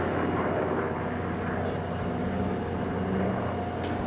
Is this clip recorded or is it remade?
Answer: recorded